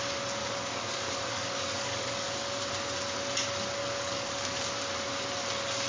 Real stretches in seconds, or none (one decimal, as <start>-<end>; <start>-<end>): 0.0-0.4; 2.7-3.8; 4.6-5.9